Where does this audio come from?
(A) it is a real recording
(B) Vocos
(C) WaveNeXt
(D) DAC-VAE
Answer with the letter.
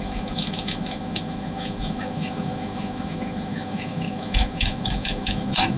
D